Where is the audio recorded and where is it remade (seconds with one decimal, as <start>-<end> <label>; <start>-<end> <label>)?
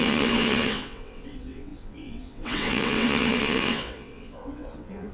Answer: 0.0-5.1 remade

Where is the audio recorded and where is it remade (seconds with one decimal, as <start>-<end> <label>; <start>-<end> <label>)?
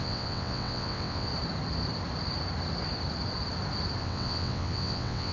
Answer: 0.0-1.3 remade; 1.3-4.0 recorded; 4.0-5.3 remade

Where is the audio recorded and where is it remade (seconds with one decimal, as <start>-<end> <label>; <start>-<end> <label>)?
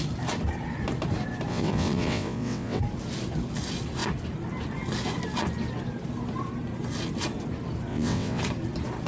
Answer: 0.0-1.5 recorded; 1.5-2.8 remade; 2.8-7.9 recorded; 7.9-8.4 remade; 8.4-9.1 recorded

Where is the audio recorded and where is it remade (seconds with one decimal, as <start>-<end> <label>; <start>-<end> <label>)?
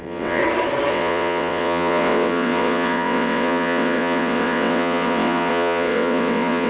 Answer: 0.0-0.4 remade; 0.4-0.9 recorded; 0.9-6.7 remade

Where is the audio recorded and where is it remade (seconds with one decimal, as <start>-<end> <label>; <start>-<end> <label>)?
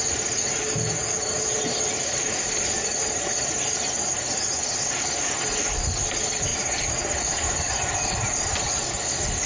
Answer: 0.0-9.5 recorded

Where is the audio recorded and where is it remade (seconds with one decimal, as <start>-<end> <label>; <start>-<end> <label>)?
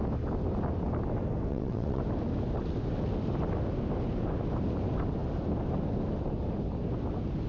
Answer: 0.0-1.5 recorded; 1.5-2.0 remade; 2.0-7.5 recorded